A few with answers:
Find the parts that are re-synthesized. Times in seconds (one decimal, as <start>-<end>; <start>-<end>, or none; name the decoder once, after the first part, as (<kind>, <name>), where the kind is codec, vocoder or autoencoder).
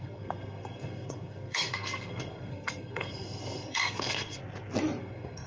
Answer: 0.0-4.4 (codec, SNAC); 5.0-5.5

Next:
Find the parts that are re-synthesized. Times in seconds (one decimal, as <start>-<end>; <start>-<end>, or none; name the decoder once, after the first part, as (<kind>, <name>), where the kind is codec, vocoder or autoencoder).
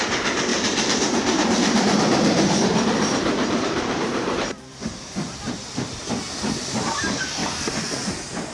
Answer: 0.5-5.4 (vocoder, BigVGAN v2)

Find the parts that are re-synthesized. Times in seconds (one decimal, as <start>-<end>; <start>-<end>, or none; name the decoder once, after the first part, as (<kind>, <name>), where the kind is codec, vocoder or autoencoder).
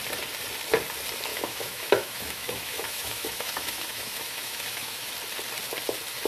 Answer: 1.3-5.1 (autoencoder, DAC-VAE)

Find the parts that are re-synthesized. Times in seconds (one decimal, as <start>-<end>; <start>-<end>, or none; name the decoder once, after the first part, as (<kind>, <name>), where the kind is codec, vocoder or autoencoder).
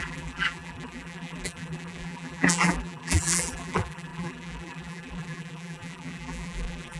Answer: 0.0-7.0 (vocoder, BigVGAN v2)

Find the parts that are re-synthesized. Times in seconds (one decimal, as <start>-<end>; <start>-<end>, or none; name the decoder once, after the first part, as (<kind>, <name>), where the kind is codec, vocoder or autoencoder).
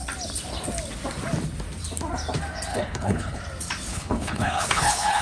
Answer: 2.7-3.4 (codec, HILCodec); 3.9-5.2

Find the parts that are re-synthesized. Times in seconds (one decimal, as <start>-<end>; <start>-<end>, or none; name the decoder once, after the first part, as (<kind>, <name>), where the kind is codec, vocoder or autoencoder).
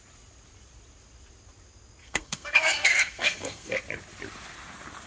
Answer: 2.0-3.8 (codec, SNAC)